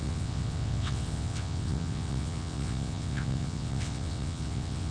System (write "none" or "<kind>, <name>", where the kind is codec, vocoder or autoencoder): vocoder, WaveNeXt